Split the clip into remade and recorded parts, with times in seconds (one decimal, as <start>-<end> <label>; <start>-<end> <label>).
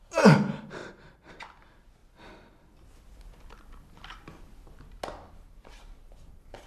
0.0-2.0 remade; 2.0-5.3 recorded; 5.3-6.7 remade